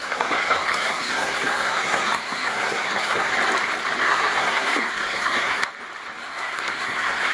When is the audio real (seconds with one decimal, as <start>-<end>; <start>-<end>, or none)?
3.3-4.0; 5.7-6.2